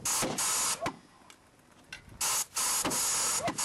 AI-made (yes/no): no